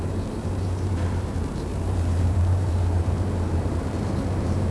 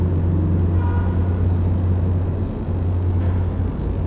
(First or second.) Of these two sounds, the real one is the second